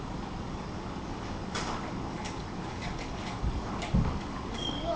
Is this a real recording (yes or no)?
no